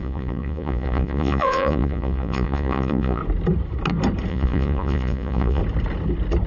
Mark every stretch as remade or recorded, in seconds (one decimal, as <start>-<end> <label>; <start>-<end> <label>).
0.0-3.2 remade; 3.2-4.3 recorded; 4.3-5.6 remade; 5.6-6.5 recorded